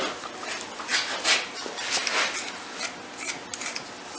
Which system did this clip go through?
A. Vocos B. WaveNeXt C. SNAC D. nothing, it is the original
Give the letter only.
D